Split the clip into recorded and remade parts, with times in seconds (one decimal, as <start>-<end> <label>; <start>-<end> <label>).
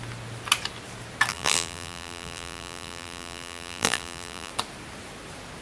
0.0-1.3 recorded; 1.3-4.5 remade; 4.5-5.6 recorded